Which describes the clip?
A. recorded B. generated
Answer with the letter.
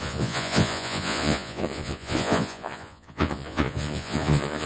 B